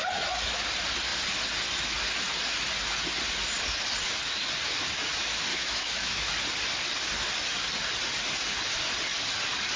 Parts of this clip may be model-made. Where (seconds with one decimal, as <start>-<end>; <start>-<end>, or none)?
5.5-6.3